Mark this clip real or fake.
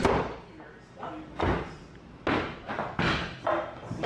real